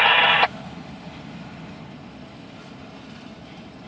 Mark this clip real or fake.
real